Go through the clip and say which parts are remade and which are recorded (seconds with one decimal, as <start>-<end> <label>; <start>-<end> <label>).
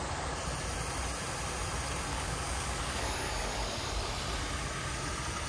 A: 0.0-2.1 recorded; 2.1-4.1 remade; 4.1-5.5 recorded